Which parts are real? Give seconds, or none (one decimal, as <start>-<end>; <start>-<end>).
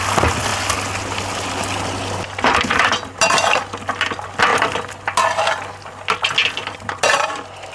0.0-7.7